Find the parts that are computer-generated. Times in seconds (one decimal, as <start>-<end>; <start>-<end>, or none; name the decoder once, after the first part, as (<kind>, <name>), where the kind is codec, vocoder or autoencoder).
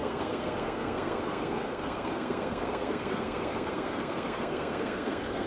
0.0-5.5 (codec, SNAC)